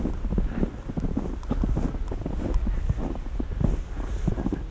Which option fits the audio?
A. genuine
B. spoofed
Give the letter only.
A